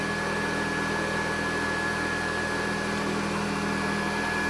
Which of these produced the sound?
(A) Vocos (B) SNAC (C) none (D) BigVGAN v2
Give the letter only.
C